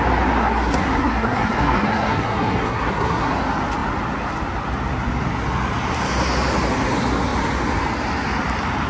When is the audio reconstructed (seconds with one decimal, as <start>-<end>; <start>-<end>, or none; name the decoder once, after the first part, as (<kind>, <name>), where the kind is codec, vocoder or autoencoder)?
0.4-3.3 (codec, SNAC)